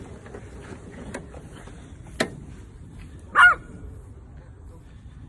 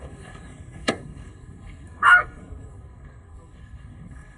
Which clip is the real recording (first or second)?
first